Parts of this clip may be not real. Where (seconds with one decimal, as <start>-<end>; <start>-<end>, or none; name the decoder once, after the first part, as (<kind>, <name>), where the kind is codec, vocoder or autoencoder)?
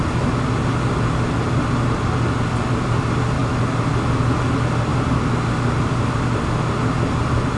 none